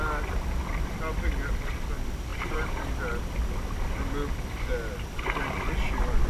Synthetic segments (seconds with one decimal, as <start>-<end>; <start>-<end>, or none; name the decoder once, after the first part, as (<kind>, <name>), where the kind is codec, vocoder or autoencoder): 2.3-3.0 (vocoder, BigVGAN v2)